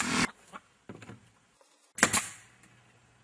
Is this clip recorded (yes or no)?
yes